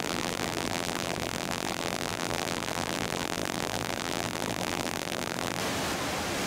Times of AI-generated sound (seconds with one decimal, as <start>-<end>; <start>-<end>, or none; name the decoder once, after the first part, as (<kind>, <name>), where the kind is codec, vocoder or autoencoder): 0.0-5.6 (vocoder, BigVGAN v2)